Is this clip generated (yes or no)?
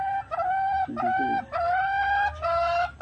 no